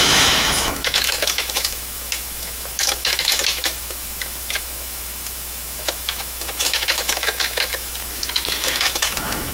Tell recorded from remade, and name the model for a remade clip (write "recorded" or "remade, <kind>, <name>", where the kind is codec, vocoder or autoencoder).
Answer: remade, autoencoder, DAC-VAE